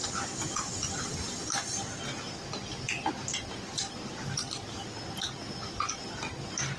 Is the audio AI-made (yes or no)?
no